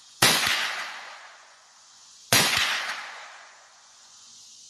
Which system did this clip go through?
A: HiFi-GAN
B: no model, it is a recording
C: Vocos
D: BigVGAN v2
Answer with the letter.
C